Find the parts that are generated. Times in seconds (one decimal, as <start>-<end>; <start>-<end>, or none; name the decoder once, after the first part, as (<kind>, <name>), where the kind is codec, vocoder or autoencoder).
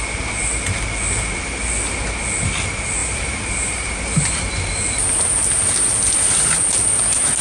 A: 3.0-4.4 (vocoder, BigVGAN v2)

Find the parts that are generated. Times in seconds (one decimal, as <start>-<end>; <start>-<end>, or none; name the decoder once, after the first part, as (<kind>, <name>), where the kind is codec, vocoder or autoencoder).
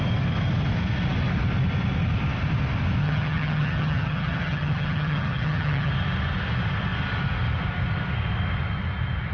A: 3.0-5.9 (vocoder, HiFi-GAN)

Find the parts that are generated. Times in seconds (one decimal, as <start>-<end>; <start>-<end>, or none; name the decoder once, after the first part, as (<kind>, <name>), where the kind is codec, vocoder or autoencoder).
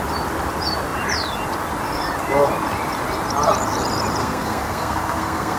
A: 4.2-5.6 (codec, SNAC)